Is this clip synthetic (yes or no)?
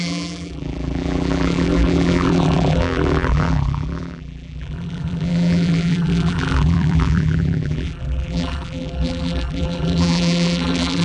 yes